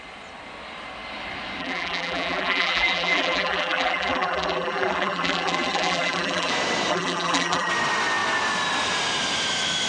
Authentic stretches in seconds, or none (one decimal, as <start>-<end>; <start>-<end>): 0.0-1.6; 6.5-6.9; 7.7-9.9